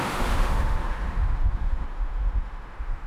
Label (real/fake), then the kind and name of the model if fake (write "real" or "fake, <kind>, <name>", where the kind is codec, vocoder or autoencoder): fake, autoencoder, DAC-VAE